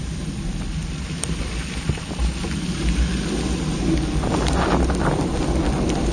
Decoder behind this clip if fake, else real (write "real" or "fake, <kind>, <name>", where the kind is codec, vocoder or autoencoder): real